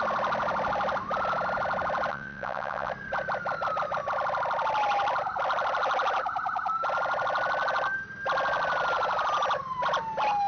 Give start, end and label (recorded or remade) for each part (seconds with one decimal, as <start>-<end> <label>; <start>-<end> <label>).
0.0-2.1 recorded; 2.1-2.9 remade; 2.9-10.5 recorded